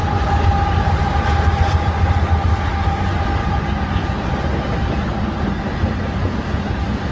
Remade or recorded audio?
recorded